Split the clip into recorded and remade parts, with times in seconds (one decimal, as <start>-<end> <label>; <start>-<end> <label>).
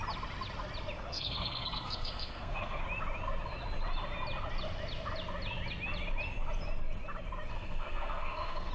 0.0-1.1 recorded; 1.1-2.8 remade; 2.8-7.5 recorded; 7.5-8.7 remade